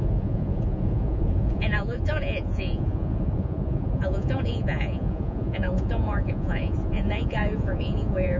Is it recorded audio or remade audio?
remade